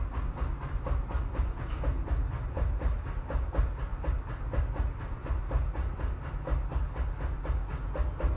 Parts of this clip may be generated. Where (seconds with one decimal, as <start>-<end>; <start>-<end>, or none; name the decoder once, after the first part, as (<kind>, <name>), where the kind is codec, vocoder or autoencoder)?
none